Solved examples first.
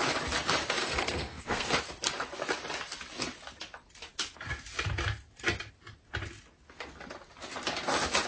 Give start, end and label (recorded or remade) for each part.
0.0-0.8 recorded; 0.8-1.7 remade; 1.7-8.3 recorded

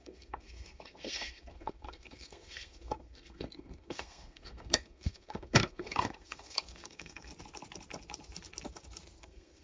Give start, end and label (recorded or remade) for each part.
0.0-7.3 remade; 7.3-9.2 recorded; 9.2-9.6 remade

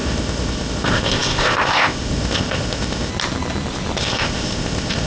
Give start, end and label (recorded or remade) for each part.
0.0-3.1 remade; 3.1-4.0 recorded; 4.0-5.1 remade

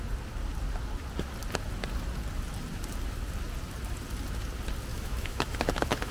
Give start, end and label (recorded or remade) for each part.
0.0-4.9 recorded; 4.9-6.1 remade